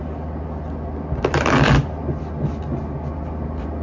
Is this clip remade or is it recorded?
recorded